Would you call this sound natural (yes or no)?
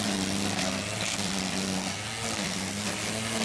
yes